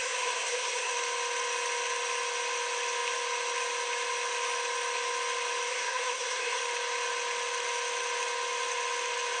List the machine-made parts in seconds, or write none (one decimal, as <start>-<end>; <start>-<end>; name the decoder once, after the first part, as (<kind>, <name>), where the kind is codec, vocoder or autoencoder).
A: 0.0-0.9 (codec, SNAC); 5.7-6.6